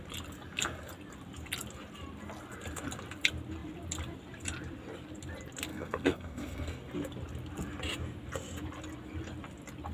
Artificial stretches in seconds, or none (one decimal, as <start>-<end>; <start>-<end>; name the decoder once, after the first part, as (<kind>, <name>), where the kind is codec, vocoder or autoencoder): 5.7-6.9 (codec, SNAC)